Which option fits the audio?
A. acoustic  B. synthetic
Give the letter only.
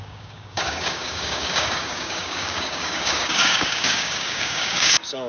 B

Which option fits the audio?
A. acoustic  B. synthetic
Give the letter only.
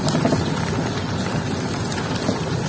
A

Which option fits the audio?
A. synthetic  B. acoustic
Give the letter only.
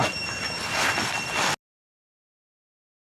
B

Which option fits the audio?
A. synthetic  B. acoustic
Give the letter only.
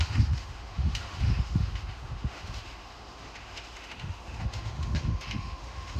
A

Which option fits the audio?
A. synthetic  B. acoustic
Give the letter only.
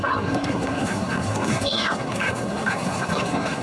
A